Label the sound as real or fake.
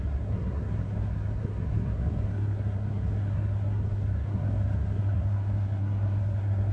fake